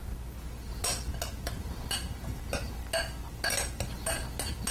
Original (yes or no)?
yes